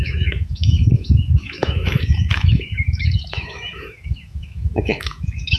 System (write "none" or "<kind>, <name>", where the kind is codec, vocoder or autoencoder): autoencoder, DAC-VAE